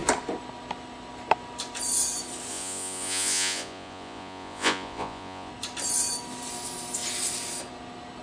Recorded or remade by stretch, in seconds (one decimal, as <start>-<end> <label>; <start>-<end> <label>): 0.0-2.5 recorded; 2.5-5.5 remade; 5.5-8.2 recorded